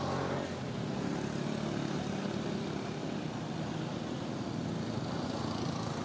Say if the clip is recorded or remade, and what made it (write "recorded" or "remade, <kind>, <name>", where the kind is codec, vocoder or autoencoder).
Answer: recorded